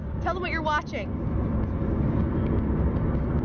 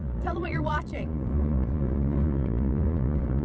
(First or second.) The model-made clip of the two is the second